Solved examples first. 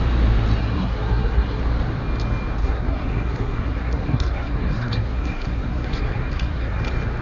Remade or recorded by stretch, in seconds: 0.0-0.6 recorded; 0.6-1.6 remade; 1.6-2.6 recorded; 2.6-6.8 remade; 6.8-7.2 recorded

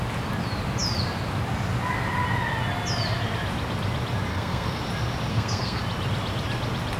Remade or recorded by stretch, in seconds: 0.0-4.3 recorded; 4.3-4.8 remade; 4.8-5.3 recorded; 5.3-5.8 remade; 5.8-7.0 recorded

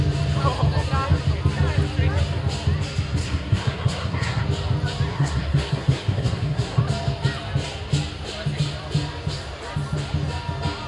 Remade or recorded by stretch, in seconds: 0.0-3.2 recorded; 3.2-4.4 remade; 4.4-5.1 recorded; 5.1-6.8 remade; 6.8-10.9 recorded